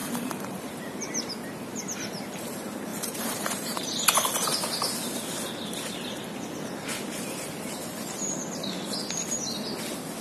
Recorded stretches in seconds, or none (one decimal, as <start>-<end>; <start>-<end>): 1.3-2.9; 3.8-4.5; 5.2-10.2

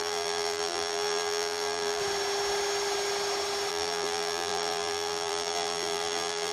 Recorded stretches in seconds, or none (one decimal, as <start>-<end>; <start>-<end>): 2.0-3.7

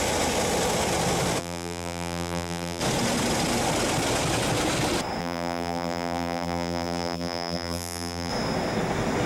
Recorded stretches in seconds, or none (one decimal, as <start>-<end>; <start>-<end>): 0.0-1.4; 2.8-5.2; 8.3-9.3

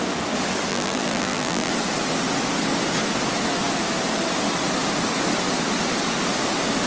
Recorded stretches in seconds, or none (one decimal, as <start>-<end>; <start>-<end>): 0.0-0.7; 1.7-6.9

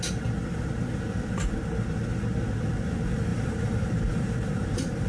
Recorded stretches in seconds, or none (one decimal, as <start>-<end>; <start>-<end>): 0.0-3.3

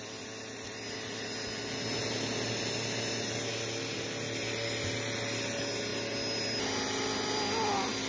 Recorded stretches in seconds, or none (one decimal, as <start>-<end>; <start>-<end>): 0.0-8.1